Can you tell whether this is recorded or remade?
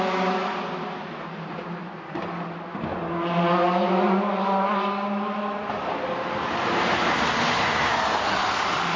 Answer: recorded